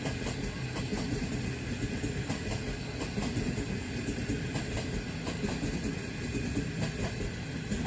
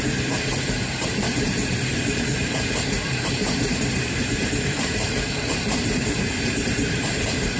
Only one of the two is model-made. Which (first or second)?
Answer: second